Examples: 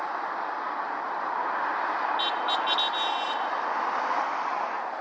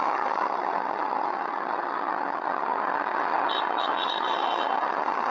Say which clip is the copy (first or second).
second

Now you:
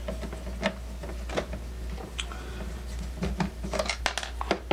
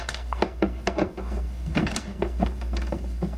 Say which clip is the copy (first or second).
second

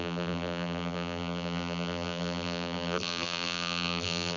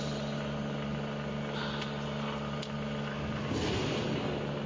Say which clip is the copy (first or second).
first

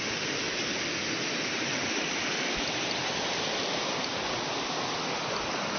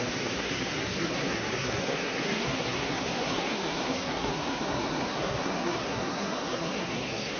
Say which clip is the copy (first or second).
second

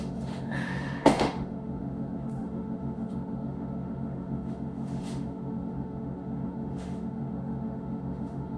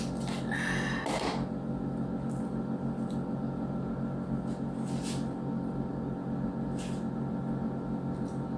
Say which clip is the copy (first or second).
first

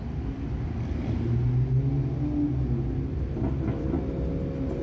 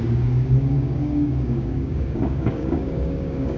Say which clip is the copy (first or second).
second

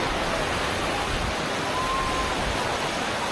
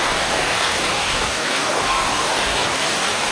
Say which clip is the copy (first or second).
second